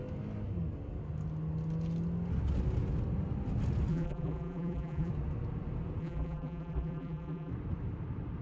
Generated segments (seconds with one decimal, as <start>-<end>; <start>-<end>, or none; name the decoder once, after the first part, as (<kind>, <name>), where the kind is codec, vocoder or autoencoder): 3.9-5.1 (vocoder, BigVGAN v2); 6.0-7.5